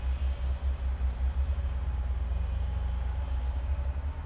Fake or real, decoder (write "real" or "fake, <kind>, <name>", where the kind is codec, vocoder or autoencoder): real